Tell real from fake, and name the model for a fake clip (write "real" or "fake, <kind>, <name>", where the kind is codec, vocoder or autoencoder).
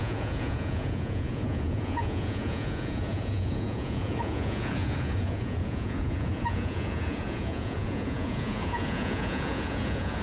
fake, vocoder, Vocos